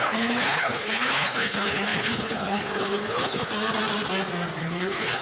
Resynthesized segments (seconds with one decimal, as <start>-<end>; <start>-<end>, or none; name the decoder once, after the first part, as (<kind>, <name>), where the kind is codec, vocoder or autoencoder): 0.0-3.5 (codec, HILCodec); 4.6-5.2